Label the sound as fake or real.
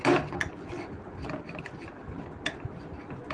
real